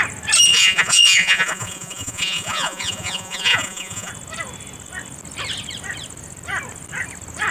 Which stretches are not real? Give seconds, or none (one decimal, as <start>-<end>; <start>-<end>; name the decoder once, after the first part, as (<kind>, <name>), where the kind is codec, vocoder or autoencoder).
0.5-4.1 (vocoder, Vocos)